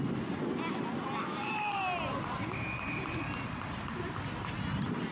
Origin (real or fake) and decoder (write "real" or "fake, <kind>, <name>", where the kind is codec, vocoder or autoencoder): real